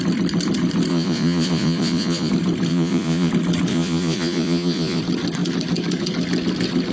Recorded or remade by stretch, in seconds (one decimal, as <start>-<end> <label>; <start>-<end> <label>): 0.0-0.9 recorded; 0.9-2.3 remade; 2.3-2.7 recorded; 2.7-3.3 remade; 3.3-3.7 recorded; 3.7-5.0 remade; 5.0-6.9 recorded